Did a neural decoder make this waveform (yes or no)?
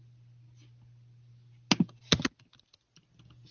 no